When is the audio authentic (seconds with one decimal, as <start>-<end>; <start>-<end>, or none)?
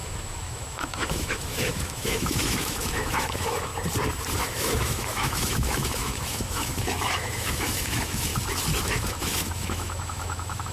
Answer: 3.7-4.4; 8.3-8.8